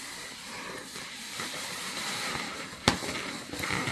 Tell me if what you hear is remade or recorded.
remade